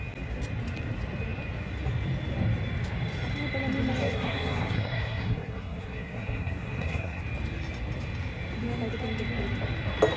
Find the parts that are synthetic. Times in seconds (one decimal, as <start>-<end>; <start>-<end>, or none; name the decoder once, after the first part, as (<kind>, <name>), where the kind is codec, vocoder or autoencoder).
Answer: 4.0-7.2 (codec, SNAC)

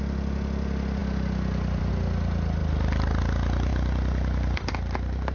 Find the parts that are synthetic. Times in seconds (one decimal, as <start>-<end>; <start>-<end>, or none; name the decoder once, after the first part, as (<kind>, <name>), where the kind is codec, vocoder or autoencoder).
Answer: 1.0-1.9 (vocoder, BigVGAN v2); 2.6-3.2; 3.7-4.7

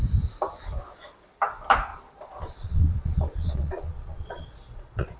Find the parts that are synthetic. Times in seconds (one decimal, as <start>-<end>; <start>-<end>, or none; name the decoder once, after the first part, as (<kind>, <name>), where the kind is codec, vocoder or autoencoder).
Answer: 1.9-5.2 (vocoder, Vocos)

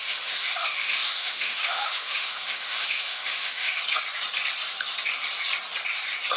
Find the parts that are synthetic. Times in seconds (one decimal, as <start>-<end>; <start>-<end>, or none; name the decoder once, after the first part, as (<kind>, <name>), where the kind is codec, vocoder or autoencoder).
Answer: 0.0-3.8 (autoencoder, DAC-VAE)

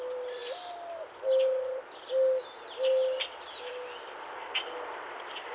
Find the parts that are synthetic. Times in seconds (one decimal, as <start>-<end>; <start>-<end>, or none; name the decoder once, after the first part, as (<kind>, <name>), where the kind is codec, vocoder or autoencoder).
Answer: none

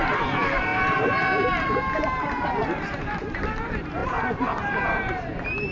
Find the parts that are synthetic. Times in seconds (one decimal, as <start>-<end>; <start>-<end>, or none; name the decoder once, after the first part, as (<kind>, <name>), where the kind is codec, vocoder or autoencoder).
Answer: 0.0-5.7 (vocoder, BigVGAN v2)

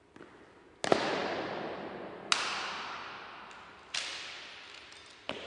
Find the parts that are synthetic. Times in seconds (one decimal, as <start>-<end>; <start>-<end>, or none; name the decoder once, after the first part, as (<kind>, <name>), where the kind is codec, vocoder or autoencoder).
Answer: none

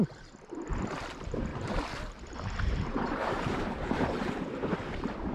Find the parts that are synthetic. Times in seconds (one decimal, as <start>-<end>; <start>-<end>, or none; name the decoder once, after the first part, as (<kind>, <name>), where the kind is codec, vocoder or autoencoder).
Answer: 1.5-4.7 (vocoder, BigVGAN v2)